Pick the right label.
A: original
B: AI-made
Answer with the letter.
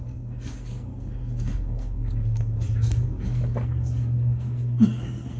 B